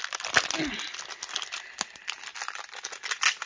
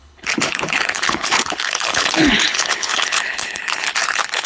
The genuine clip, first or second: first